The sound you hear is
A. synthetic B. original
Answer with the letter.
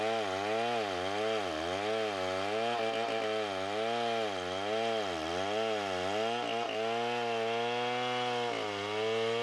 B